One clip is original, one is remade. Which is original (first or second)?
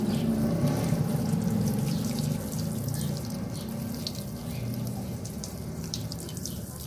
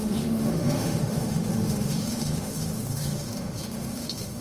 first